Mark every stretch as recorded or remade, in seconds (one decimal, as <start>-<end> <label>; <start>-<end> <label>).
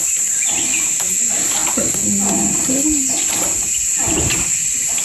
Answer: 0.0-5.0 recorded